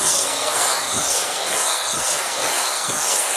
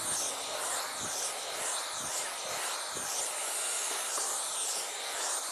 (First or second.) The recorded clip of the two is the second